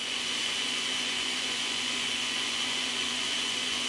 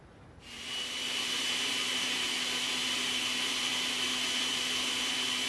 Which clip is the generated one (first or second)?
first